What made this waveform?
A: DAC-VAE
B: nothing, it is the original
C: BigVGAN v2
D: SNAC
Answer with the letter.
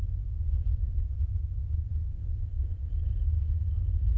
C